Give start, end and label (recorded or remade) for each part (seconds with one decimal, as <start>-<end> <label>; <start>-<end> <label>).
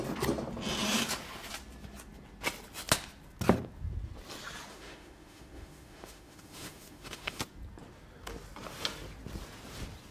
0.0-4.7 recorded; 4.7-7.4 remade; 7.4-10.1 recorded